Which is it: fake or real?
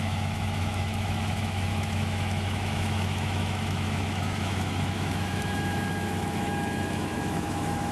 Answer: fake